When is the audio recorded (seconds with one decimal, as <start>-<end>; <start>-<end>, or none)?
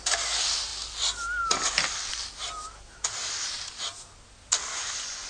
0.0-4.7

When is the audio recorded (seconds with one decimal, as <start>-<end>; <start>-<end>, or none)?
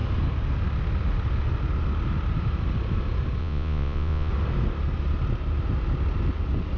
0.0-3.4; 4.3-6.8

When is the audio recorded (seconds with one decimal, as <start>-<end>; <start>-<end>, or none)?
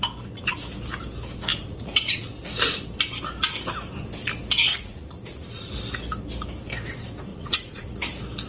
0.0-1.5; 2.3-4.7; 5.7-7.3; 8.0-8.5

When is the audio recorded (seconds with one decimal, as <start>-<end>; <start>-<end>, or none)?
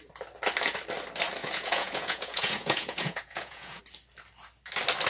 0.0-1.4; 3.8-5.1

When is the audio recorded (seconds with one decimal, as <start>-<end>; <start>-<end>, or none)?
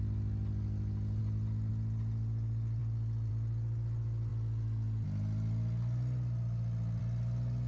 0.0-7.7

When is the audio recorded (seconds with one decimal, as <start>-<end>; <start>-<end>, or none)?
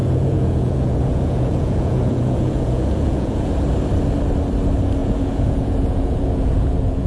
3.5-5.0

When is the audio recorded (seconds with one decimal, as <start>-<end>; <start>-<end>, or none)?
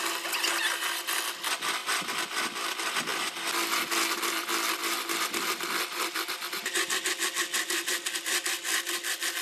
0.0-9.4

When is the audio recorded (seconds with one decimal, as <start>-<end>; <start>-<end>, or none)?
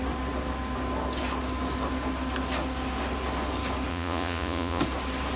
0.0-3.9; 4.8-5.4